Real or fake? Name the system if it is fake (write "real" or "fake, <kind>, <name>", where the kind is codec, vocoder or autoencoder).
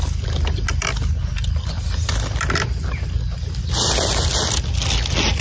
real